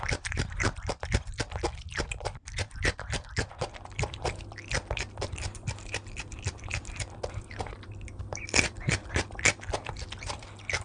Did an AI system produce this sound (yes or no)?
yes